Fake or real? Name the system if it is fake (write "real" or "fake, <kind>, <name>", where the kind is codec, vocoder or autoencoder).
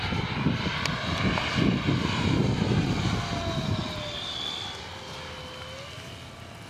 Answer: real